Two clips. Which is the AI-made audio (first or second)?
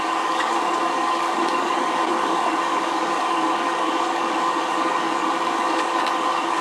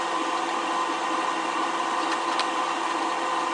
first